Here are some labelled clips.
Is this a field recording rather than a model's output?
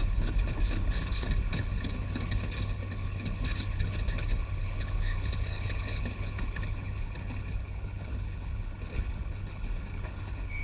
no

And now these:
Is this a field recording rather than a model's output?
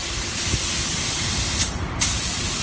yes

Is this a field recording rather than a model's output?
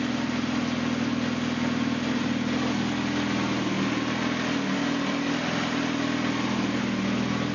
yes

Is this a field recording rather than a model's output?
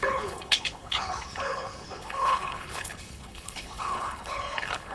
no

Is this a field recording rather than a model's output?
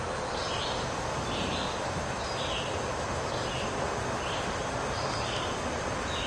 yes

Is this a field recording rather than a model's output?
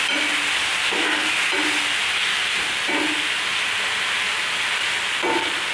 yes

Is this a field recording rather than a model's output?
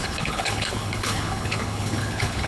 no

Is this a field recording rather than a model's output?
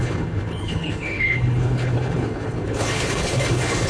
no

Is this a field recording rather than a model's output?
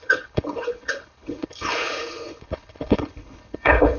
no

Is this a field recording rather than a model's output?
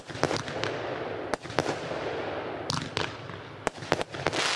yes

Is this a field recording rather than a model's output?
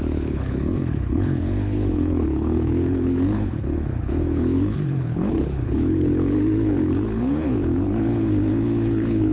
no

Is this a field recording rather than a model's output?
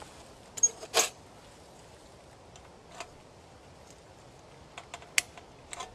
yes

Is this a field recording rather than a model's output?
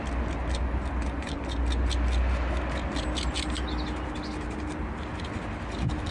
yes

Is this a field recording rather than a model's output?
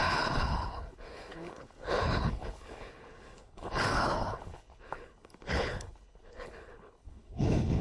no